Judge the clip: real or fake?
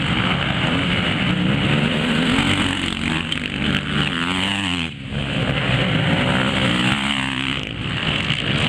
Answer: real